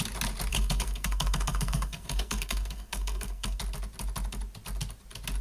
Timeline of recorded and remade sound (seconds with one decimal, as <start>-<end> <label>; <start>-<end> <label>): 0.0-0.5 recorded; 0.5-3.6 remade; 3.6-5.4 recorded